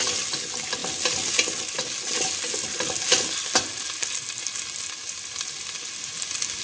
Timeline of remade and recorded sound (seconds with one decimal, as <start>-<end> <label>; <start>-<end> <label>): 0.0-6.6 recorded

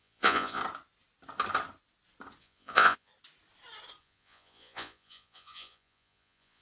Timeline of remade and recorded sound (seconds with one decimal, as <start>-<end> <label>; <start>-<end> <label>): 0.0-0.6 remade; 0.6-2.4 recorded; 2.4-3.1 remade; 3.1-4.0 recorded; 4.0-6.6 remade

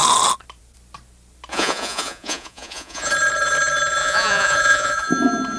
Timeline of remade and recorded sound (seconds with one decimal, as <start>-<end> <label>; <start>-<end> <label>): 0.0-1.5 recorded; 1.5-3.1 remade; 3.1-4.0 recorded; 4.0-5.1 remade; 5.1-5.6 recorded

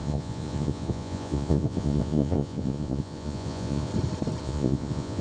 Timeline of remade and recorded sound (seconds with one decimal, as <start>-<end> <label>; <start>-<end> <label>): 0.0-3.9 remade; 3.9-4.4 recorded; 4.4-5.2 remade

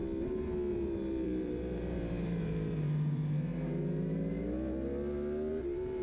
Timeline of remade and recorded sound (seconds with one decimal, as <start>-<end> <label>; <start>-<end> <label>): 0.0-0.7 recorded; 0.7-3.5 remade; 3.5-5.5 recorded; 5.5-6.0 remade

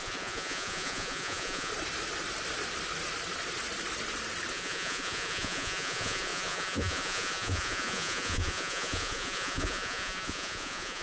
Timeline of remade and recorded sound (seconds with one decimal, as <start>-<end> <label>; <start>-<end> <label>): 0.0-1.7 remade; 1.7-4.5 recorded; 4.5-11.0 remade